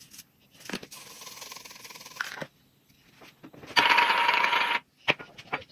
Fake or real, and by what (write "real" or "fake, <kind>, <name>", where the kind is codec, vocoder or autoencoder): real